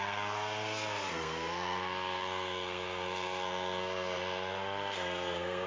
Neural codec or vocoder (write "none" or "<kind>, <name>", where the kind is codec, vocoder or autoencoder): codec, SNAC